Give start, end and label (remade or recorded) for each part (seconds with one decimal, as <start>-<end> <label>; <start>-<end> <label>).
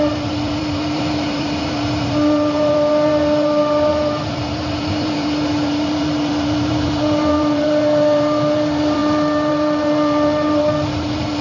0.0-11.4 remade